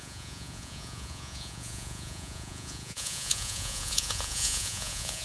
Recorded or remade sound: remade